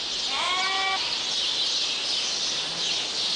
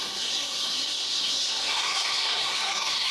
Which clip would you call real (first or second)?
first